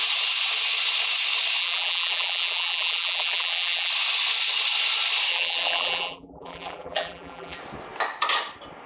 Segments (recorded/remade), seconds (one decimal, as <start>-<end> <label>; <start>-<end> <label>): 0.0-1.6 recorded; 1.6-3.9 remade; 3.9-5.3 recorded; 5.3-7.6 remade; 7.6-8.9 recorded